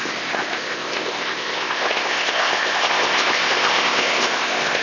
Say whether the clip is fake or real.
fake